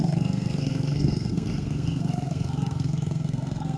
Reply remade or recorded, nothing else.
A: remade